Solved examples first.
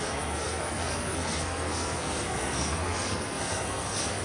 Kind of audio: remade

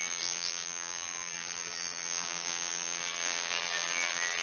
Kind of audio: remade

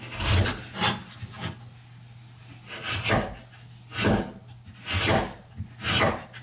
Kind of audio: recorded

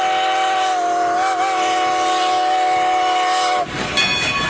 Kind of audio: recorded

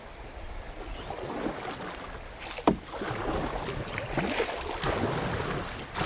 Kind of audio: recorded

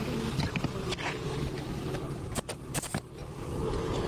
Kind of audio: remade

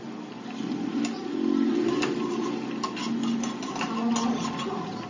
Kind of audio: recorded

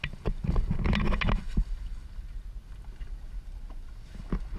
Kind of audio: recorded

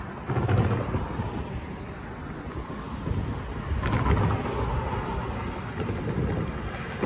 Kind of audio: recorded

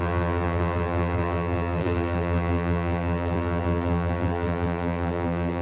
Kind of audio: remade